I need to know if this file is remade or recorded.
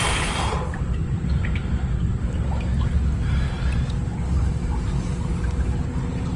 recorded